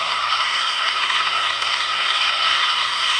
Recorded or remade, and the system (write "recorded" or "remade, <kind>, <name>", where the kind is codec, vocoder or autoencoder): remade, codec, SNAC